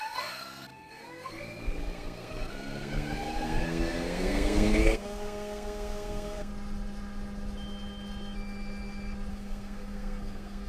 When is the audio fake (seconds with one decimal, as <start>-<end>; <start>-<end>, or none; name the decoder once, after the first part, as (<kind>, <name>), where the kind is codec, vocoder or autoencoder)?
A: 0.0-6.5 (codec, SNAC); 9.3-10.7